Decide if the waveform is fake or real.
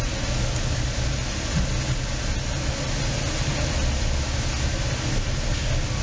real